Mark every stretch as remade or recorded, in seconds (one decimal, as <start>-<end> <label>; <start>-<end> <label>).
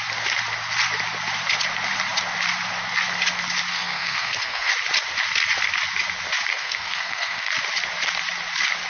0.0-3.7 recorded; 3.7-4.7 remade; 4.7-6.5 recorded; 6.5-7.5 remade; 7.5-8.9 recorded